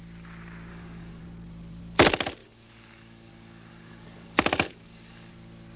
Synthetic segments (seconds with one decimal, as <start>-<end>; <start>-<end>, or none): 0.7-1.2; 2.4-5.3